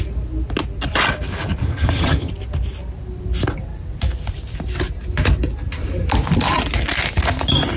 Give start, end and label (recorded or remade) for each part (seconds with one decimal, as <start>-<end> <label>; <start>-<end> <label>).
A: 0.0-1.6 recorded; 1.6-2.3 remade; 2.3-7.8 recorded